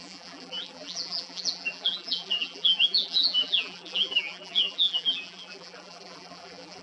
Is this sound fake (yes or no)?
yes